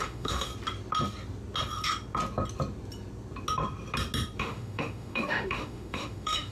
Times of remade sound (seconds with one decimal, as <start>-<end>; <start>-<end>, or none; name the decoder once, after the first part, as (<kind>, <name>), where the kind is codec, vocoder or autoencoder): 0.0-0.5 (autoencoder, DAC-VAE); 4.4-6.5